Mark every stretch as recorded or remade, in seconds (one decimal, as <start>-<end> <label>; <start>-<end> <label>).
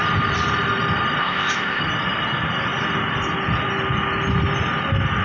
0.0-1.2 recorded; 1.2-1.8 remade; 1.8-5.2 recorded